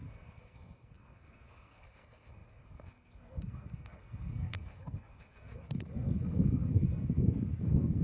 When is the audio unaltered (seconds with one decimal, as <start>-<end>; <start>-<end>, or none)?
none